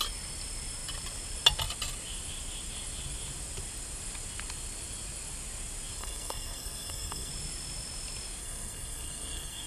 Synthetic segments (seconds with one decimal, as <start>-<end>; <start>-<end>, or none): 6.0-7.3; 8.4-9.7